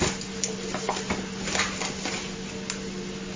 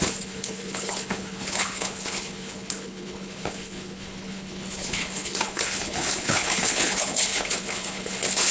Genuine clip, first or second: first